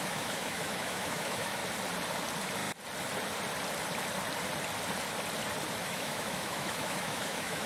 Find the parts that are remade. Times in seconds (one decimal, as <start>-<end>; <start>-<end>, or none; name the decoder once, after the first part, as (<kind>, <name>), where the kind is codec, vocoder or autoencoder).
0.0-1.6 (autoencoder, DAC-VAE); 5.7-7.7